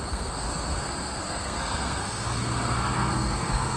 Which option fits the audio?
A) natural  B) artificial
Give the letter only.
B